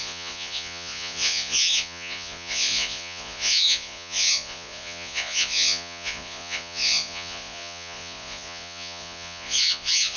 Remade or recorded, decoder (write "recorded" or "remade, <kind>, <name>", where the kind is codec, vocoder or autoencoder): remade, vocoder, Vocos